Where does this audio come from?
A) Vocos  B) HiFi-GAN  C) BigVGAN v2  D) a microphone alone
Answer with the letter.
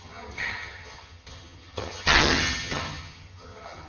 B